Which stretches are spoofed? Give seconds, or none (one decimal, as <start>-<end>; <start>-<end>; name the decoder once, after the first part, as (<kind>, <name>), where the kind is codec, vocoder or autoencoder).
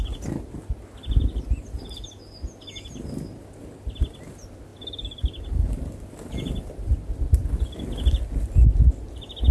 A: none